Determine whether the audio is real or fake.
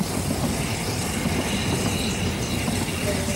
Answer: real